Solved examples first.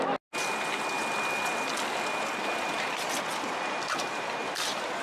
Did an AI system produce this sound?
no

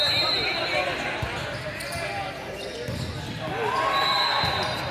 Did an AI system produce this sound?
no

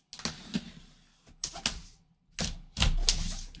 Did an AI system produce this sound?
no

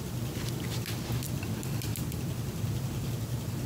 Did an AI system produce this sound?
no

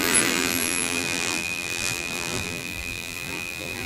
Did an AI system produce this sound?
yes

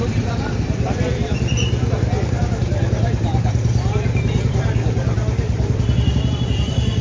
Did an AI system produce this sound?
yes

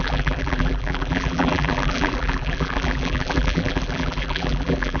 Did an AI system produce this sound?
yes